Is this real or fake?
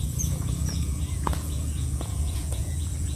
fake